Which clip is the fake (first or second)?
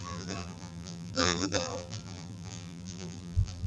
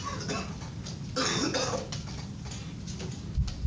first